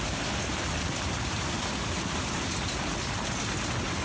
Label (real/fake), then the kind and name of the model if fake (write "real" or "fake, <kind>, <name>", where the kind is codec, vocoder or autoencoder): real